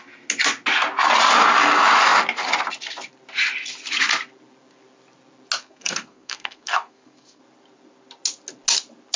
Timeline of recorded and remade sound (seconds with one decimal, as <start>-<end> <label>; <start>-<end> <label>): 0.0-5.6 recorded; 5.6-7.4 remade; 7.4-9.2 recorded